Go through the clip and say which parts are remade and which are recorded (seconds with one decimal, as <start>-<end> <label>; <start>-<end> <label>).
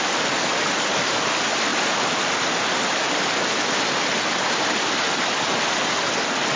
0.0-6.6 recorded